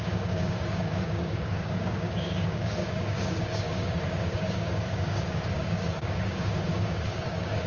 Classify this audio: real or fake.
fake